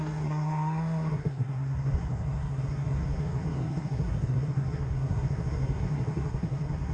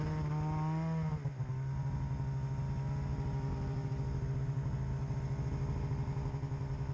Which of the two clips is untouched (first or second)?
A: second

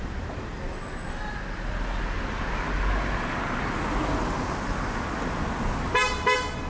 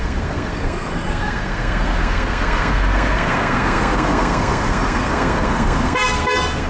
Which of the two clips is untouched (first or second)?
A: first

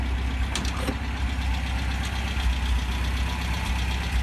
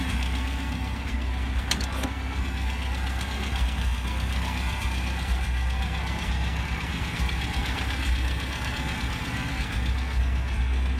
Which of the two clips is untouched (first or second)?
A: first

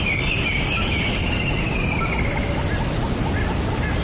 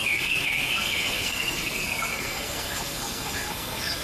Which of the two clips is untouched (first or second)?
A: first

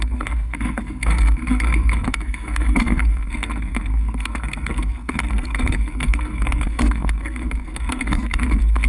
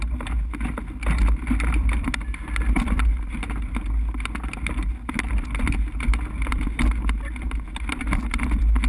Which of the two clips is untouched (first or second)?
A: second